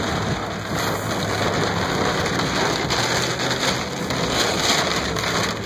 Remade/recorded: recorded